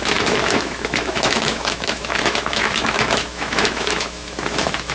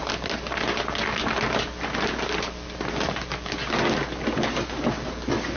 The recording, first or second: second